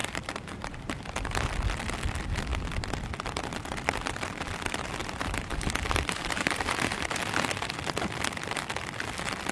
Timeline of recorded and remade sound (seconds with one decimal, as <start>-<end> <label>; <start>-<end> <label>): 0.0-1.2 remade; 1.2-5.0 recorded; 5.0-7.2 remade; 7.2-9.5 recorded